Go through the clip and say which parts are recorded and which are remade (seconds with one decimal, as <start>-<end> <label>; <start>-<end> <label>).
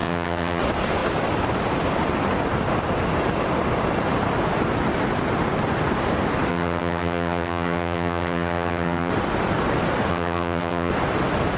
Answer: 0.0-0.6 remade; 0.6-6.5 recorded; 6.5-9.1 remade; 9.1-10.1 recorded; 10.1-10.9 remade; 10.9-11.6 recorded